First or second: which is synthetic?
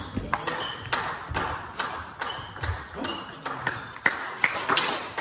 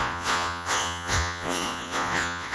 second